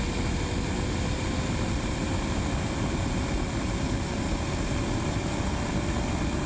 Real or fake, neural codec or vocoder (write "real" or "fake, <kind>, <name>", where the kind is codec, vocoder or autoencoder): real